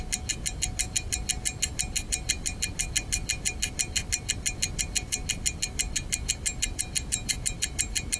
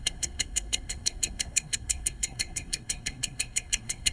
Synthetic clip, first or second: second